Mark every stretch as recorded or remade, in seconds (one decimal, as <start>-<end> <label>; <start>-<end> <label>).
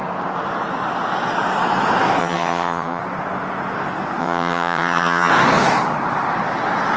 0.0-2.2 recorded; 2.2-3.0 remade; 3.0-4.2 recorded; 4.2-5.3 remade; 5.3-7.0 recorded